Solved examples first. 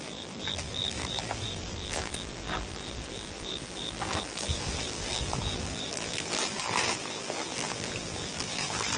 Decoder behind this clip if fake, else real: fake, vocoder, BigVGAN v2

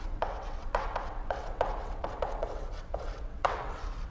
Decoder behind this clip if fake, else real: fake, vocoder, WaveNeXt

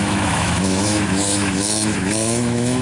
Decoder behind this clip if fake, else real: fake, autoencoder, DAC-VAE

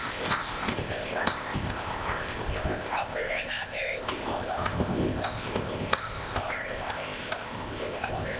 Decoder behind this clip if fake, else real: fake, codec, ZipCodec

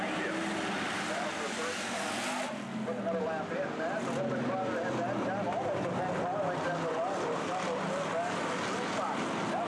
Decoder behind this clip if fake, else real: real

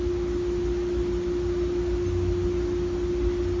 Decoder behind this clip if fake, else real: real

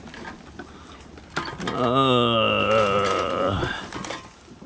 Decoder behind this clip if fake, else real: real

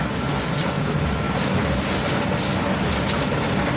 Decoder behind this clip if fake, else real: real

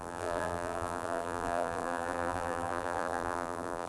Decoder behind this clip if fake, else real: fake, vocoder, BigVGAN v2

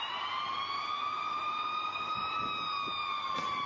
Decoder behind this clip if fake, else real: real